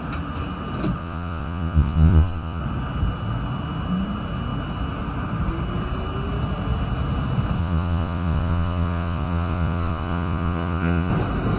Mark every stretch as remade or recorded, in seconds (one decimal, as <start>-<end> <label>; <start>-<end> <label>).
0.0-1.0 recorded; 1.0-2.6 remade; 2.6-7.6 recorded; 7.6-11.1 remade; 11.1-11.6 recorded